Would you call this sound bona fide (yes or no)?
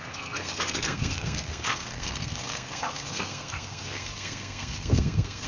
no